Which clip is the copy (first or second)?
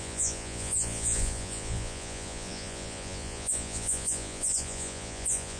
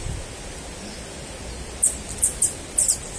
first